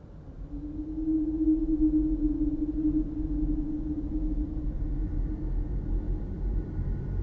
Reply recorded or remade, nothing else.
recorded